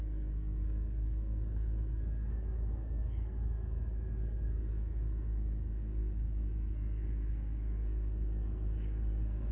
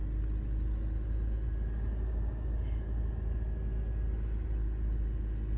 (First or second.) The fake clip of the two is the first